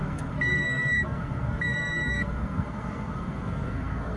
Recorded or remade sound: remade